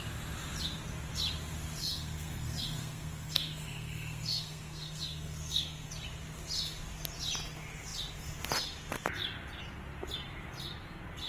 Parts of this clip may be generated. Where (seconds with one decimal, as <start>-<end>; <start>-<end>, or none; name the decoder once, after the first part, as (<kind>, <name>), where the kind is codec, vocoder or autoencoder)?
1.8-5.9 (codec, SNAC)